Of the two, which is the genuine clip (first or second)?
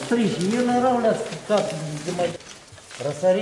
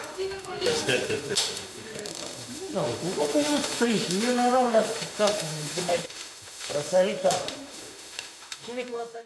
first